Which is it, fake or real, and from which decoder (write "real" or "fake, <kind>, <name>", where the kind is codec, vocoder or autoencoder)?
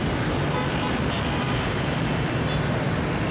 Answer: real